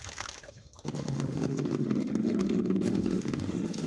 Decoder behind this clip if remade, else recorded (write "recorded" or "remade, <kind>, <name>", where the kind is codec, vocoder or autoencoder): remade, autoencoder, DAC-VAE